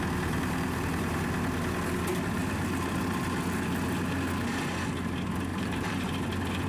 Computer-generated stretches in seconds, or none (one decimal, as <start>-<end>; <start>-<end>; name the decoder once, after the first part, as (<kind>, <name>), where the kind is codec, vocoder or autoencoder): 5.5-6.1 (vocoder, BigVGAN v2)